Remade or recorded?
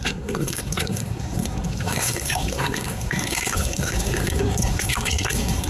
remade